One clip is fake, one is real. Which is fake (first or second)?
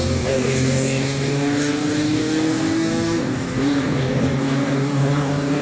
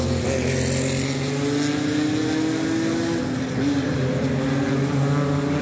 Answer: first